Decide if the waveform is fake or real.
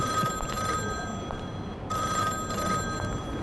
fake